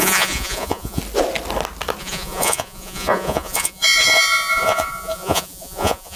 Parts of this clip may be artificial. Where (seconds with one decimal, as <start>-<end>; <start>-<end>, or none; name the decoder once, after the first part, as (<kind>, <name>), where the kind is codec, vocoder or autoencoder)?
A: 0.0-1.0 (vocoder, Vocos); 2.0-6.2